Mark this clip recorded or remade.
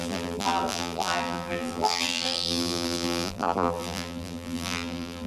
remade